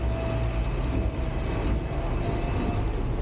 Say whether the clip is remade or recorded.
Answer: recorded